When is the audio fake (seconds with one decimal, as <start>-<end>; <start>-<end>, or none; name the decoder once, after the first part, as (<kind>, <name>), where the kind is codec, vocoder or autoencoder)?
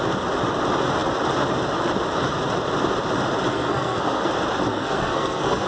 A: 3.5-4.3 (codec, SNAC); 4.7-5.7